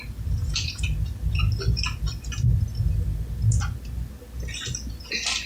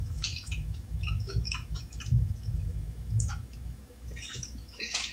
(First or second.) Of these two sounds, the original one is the first